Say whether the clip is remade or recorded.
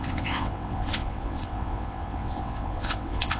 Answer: remade